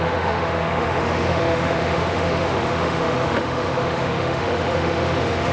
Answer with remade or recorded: remade